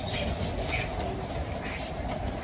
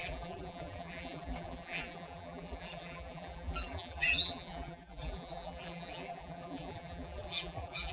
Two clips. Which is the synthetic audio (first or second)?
second